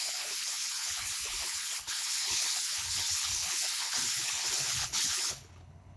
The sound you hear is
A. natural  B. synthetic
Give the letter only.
B